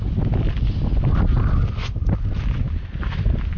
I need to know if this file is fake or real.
real